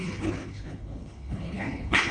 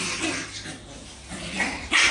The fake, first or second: first